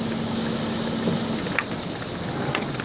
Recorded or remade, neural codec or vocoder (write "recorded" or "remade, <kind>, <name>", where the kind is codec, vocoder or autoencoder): recorded